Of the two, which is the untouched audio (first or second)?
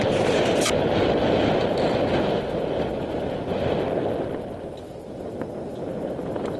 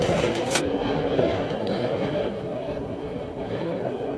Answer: first